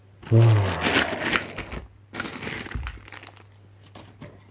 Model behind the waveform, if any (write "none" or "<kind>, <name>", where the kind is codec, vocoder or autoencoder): none